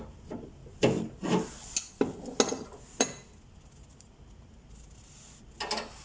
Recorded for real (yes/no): yes